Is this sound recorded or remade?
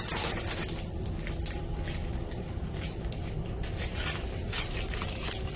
recorded